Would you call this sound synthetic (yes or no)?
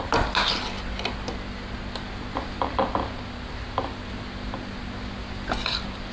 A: no